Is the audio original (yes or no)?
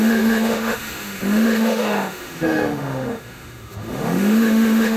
no